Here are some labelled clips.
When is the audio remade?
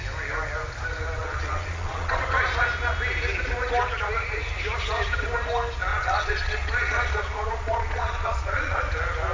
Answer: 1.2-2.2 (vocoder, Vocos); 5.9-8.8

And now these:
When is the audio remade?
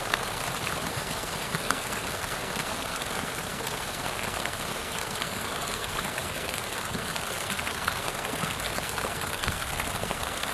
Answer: 0.0-0.4 (codec, SNAC); 0.9-10.5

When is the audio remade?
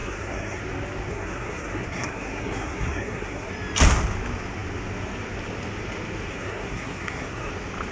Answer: 0.0-0.6 (codec, SNAC); 1.1-3.5; 6.3-7.5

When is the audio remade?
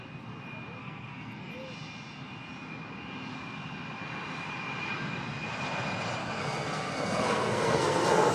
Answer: 0.8-1.5 (codec, SNAC); 6.2-8.3